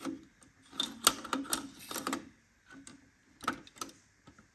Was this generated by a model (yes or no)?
no